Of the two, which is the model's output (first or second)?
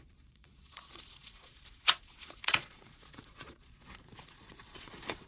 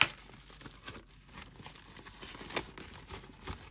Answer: first